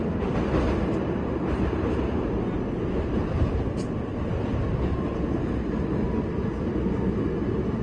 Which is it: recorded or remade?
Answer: recorded